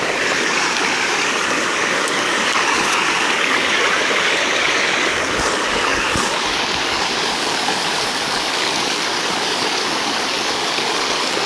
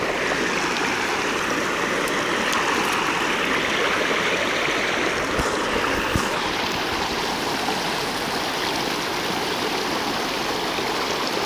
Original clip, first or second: second